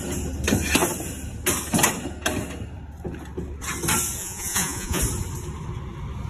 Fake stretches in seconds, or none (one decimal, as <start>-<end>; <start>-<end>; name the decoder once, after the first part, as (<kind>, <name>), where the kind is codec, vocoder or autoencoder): 4.2-5.0 (vocoder, Vocos)

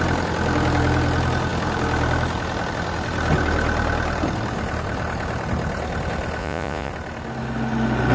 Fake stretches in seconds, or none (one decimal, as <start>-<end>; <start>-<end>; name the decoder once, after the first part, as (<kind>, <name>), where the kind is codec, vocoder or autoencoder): 6.4-6.9 (vocoder, Vocos)

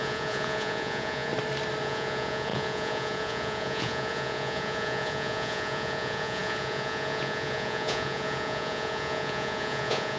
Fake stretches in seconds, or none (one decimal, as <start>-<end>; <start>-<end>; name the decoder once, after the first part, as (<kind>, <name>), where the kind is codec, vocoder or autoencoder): 0.0-1.3 (vocoder, Vocos); 1.8-10.2

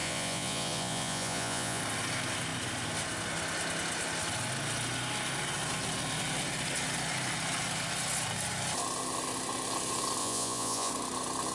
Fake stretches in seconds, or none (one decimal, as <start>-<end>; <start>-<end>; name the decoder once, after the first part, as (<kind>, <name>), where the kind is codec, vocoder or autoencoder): 0.0-1.8 (vocoder, Vocos); 10.2-10.9

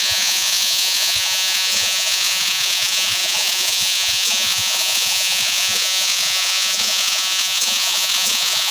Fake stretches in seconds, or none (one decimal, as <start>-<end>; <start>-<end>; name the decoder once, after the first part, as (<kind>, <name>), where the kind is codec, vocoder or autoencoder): 0.0-8.7 (vocoder, Vocos)